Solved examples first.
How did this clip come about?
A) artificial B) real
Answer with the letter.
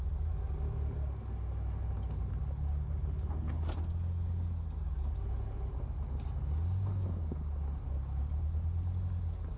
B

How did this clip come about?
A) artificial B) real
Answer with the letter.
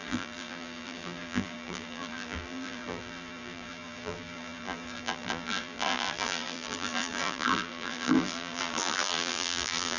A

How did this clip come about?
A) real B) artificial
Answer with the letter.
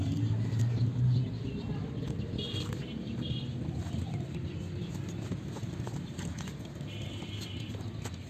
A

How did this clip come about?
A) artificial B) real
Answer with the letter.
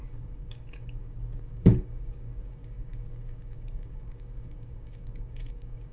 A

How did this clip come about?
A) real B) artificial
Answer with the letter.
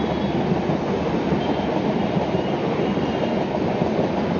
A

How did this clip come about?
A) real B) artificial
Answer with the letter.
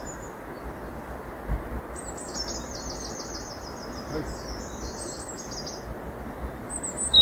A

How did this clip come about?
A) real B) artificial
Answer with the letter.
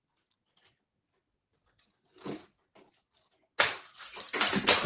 A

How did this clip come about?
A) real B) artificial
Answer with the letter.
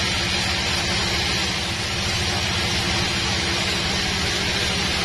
A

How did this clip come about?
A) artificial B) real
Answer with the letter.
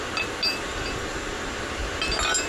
B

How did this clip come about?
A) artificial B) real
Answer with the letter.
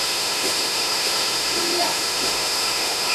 A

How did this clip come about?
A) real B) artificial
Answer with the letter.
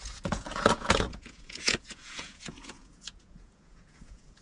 B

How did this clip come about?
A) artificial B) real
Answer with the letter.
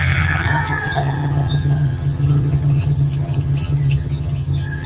A